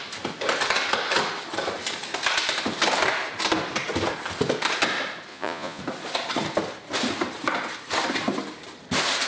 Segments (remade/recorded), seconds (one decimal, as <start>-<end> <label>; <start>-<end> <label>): 0.0-5.3 recorded; 5.3-5.8 remade; 5.8-9.3 recorded